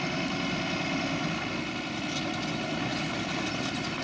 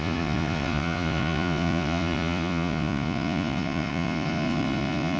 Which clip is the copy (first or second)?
second